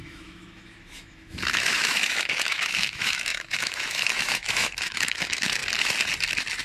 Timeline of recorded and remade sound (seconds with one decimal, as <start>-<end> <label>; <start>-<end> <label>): 0.0-5.6 remade; 5.6-6.6 recorded